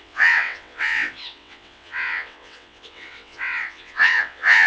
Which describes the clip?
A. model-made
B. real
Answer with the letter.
A